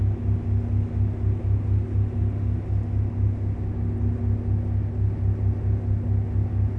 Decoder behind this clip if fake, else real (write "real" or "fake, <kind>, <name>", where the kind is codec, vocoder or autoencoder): real